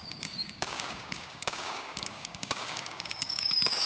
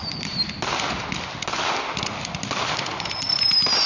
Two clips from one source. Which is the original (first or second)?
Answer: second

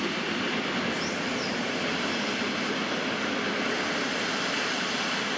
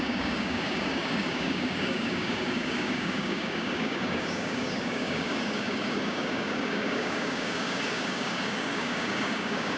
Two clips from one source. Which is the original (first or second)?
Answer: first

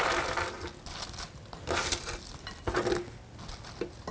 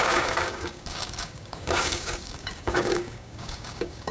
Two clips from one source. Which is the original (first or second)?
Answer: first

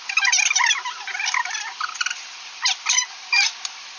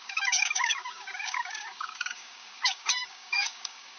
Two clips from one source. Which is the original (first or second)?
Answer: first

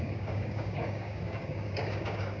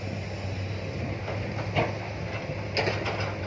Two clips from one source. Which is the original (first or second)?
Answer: second